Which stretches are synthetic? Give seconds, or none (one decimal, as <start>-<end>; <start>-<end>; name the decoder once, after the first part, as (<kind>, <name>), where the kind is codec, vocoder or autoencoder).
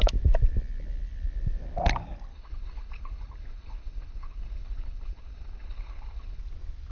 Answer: 2.3-6.4 (codec, HILCodec)